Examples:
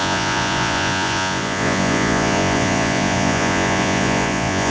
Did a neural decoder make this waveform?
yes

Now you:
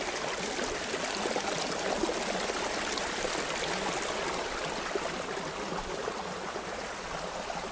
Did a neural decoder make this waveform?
no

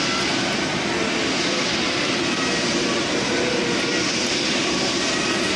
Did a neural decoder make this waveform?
yes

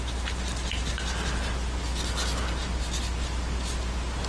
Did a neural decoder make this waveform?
no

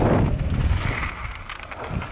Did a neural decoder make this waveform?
no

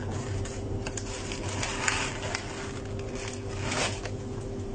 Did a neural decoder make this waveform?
no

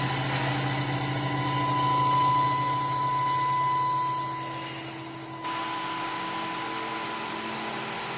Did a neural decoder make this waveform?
no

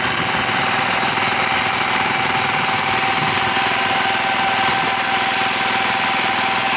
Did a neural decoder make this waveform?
no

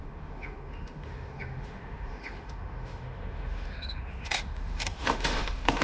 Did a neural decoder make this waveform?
yes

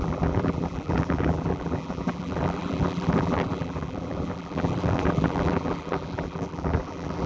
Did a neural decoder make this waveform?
yes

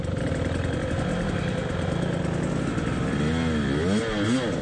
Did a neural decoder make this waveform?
no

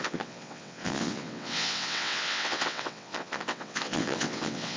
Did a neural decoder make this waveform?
yes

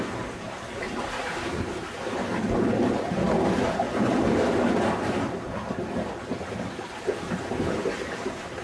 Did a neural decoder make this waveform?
no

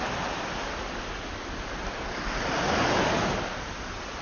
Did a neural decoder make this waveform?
no